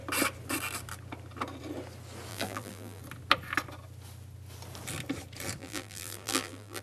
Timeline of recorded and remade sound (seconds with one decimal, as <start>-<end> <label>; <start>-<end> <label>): 0.0-2.3 recorded; 2.3-3.0 remade; 3.0-5.6 recorded; 5.6-6.8 remade